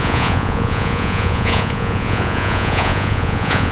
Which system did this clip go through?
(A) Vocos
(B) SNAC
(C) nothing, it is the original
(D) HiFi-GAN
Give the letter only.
A